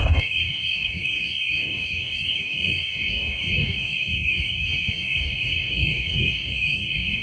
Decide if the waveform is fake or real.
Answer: fake